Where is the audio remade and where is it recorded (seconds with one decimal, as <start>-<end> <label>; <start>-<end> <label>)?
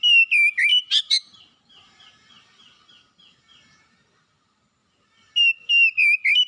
0.0-0.7 recorded; 0.7-2.1 remade; 2.1-6.5 recorded